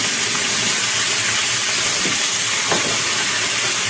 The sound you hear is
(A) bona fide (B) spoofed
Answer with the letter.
A